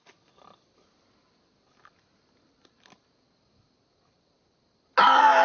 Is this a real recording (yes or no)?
yes